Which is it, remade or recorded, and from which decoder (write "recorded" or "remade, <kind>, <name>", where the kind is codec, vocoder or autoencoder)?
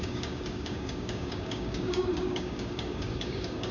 remade, codec, DAC